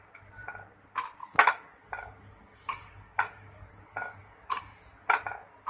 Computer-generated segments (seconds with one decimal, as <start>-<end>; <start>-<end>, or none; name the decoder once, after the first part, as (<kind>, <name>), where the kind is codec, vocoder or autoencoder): 1.2-4.6 (codec, DAC)